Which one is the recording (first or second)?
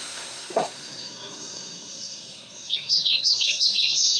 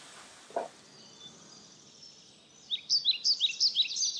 second